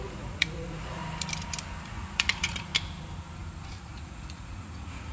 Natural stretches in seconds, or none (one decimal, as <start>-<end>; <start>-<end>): 1.0-1.9; 2.7-3.7

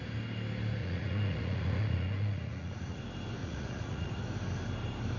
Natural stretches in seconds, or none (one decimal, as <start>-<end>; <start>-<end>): 0.0-0.8; 3.0-3.4; 4.2-5.2

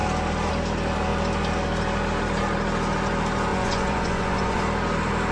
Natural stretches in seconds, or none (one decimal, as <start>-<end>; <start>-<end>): 0.0-3.5; 4.6-5.3